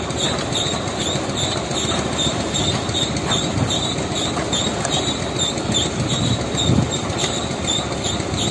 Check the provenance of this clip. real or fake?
real